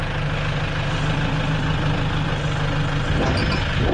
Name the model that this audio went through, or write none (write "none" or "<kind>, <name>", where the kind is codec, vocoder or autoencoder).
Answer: none